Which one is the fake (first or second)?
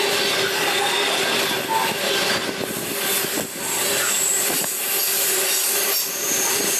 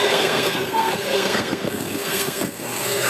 second